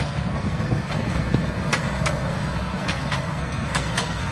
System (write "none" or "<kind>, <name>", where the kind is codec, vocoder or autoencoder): codec, SNAC